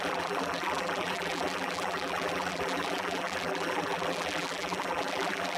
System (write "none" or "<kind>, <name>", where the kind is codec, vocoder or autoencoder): vocoder, BigVGAN v2